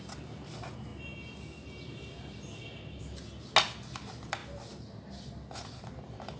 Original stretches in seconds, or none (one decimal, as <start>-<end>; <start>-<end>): 0.0-6.4